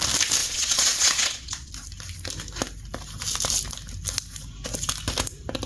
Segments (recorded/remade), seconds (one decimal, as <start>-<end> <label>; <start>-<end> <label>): 0.0-0.4 recorded; 0.4-1.7 remade; 1.7-5.7 recorded